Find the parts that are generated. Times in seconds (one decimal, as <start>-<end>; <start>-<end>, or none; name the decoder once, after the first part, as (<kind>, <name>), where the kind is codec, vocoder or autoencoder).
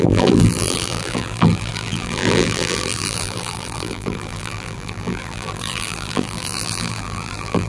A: 0.0-7.7 (vocoder, BigVGAN v2)